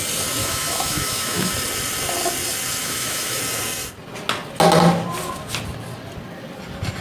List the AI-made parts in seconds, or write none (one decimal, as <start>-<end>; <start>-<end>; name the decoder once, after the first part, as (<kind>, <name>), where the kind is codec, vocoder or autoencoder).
0.4-1.5 (autoencoder, DAC-VAE); 2.8-3.4